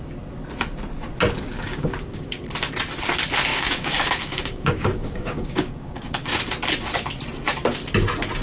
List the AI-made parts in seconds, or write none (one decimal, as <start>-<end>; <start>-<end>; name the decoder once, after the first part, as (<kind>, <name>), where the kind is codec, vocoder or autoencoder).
1.5-2.4 (codec, DAC); 3.5-6.4